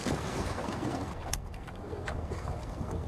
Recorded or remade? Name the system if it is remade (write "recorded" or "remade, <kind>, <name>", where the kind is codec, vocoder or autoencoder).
remade, codec, SNAC